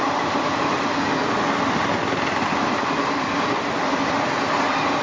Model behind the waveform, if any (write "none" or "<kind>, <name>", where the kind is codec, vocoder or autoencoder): none